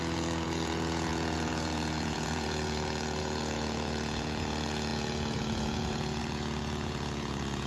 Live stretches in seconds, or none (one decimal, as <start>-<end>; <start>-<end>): none